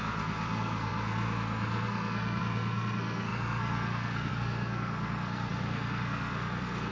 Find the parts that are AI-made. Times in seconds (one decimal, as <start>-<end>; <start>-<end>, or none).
0.0-6.9